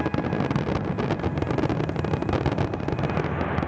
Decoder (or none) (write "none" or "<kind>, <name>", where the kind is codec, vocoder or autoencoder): none